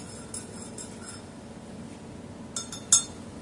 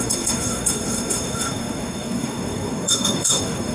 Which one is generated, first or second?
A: second